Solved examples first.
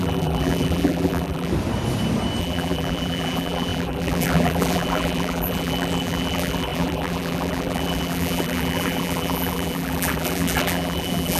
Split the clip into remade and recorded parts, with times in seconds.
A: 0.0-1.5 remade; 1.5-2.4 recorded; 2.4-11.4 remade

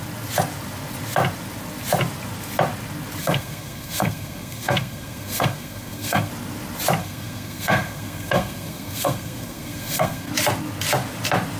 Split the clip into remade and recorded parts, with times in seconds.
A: 0.0-3.2 recorded; 3.2-6.3 remade; 6.3-7.0 recorded; 7.0-10.3 remade; 10.3-11.6 recorded

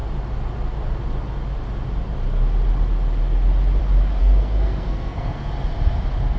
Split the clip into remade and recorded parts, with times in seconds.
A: 0.0-4.2 recorded; 4.2-5.5 remade; 5.5-6.4 recorded

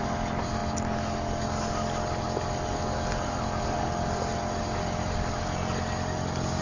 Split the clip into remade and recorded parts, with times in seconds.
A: 0.0-6.6 recorded

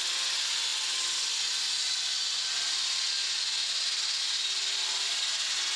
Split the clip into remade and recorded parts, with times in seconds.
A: 0.0-5.8 recorded

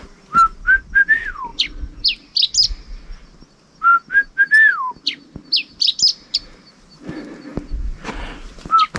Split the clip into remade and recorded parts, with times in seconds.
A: 0.0-9.0 recorded